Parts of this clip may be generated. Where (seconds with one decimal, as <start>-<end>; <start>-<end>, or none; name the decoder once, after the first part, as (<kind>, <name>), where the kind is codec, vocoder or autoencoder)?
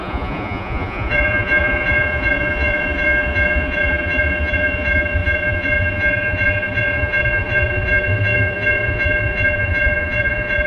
0.0-10.7 (vocoder, Vocos)